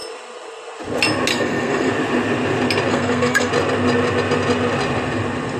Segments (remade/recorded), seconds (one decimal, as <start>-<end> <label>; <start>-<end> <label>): 0.0-1.3 recorded; 1.3-1.9 remade; 1.9-2.9 recorded; 2.9-3.5 remade; 3.5-5.6 recorded